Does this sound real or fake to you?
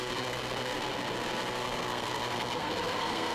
fake